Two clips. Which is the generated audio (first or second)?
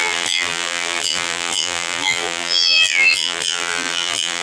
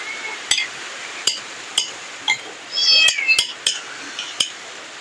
first